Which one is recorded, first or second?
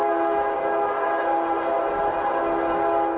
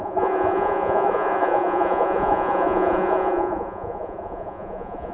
first